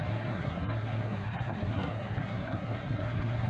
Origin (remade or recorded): remade